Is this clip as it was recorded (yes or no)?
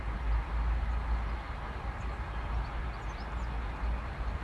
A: yes